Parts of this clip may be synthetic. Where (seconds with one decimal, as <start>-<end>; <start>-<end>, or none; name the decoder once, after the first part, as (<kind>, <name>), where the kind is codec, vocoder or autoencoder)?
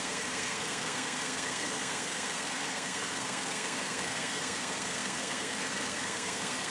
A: 0.0-6.7 (codec, SNAC)